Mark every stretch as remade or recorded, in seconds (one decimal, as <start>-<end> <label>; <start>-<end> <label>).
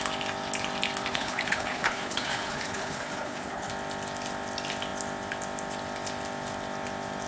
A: 0.0-1.1 recorded; 1.1-3.7 remade; 3.7-7.3 recorded